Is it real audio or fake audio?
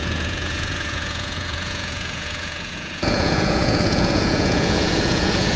fake